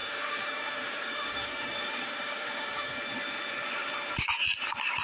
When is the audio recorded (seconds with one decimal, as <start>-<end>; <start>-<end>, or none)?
3.0-5.0